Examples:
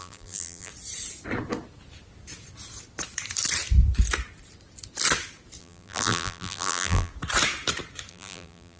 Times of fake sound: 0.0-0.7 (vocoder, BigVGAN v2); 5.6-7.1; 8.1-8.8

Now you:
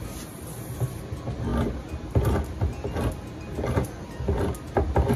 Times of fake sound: none

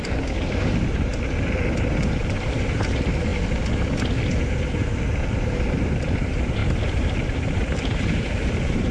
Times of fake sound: 0.0-1.1 (vocoder, BigVGAN v2); 1.9-3.3; 5.3-8.9

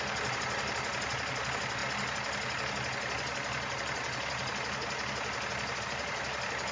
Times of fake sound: none

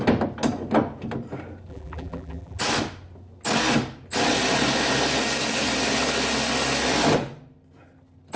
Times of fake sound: 1.7-2.6 (vocoder, BigVGAN v2)

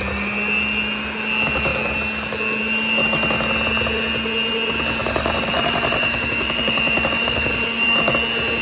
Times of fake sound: 5.0-8.1 (vocoder, BigVGAN v2)

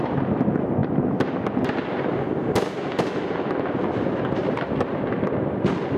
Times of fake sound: 4.4-4.9 (vocoder, BigVGAN v2)

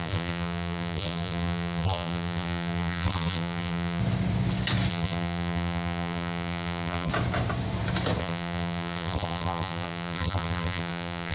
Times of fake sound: 0.0-4.0 (vocoder, BigVGAN v2); 4.9-7.1; 8.2-11.3